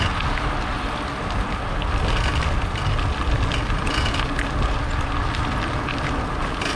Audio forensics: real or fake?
real